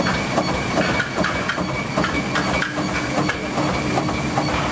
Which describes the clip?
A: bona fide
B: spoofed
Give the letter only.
A